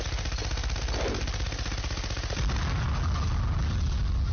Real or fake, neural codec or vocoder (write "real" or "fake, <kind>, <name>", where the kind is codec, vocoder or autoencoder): real